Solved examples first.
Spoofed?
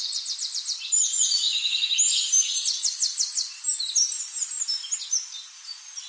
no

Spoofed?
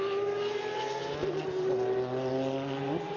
no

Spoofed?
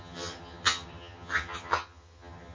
yes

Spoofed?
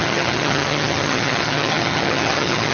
yes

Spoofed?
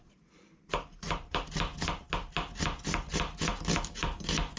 no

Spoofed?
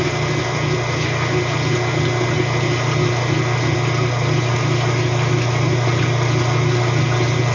no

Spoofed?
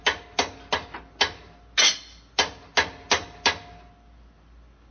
no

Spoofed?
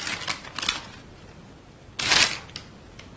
no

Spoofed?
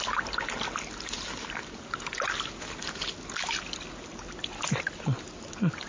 no